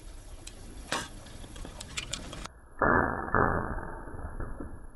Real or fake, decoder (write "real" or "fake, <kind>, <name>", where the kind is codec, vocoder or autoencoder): fake, vocoder, Vocos